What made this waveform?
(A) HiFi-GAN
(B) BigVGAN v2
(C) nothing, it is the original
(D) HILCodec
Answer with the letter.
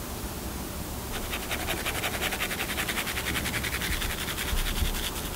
C